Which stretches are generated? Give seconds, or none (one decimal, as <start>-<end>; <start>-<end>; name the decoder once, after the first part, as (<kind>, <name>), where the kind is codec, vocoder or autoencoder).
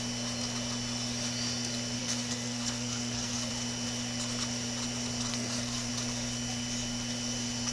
2.0-3.5 (codec, SNAC); 5.3-5.9